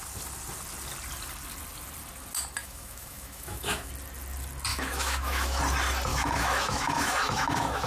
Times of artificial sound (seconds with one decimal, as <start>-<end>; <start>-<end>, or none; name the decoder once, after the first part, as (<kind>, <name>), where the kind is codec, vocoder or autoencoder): 2.6-3.9 (autoencoder, DAC-VAE); 4.7-5.6; 6.1-7.9